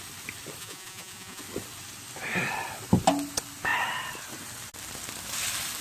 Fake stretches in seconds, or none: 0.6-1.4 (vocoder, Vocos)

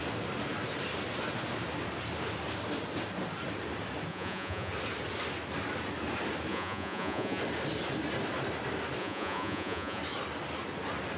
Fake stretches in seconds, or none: 4.1-4.7 (vocoder, Vocos); 6.5-7.4; 9.0-10.0